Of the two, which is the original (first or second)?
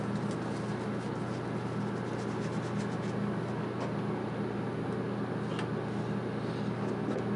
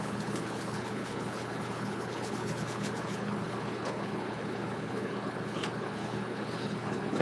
first